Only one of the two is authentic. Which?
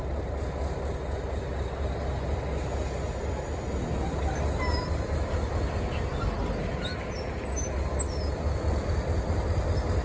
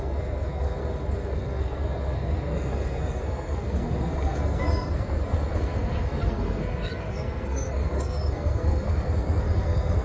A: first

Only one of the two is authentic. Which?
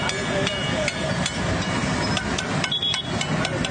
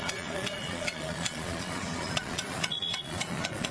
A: first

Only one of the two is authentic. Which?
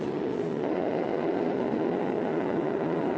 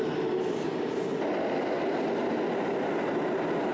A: second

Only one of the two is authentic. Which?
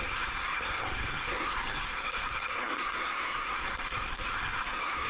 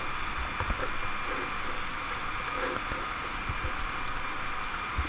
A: second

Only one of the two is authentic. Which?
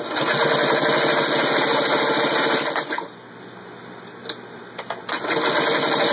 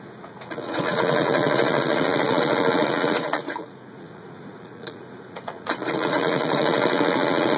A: first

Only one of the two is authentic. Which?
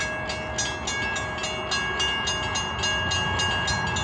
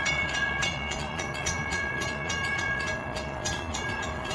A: first